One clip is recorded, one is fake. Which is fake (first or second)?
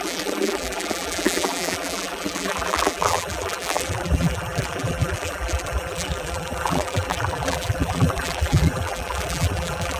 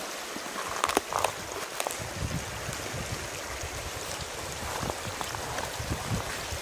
first